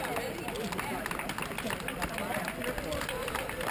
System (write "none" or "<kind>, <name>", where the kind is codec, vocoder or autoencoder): none